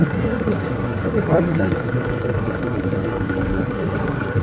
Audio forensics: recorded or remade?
remade